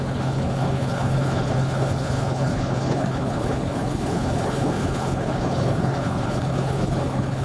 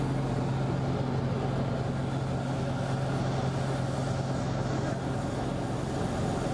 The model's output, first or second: first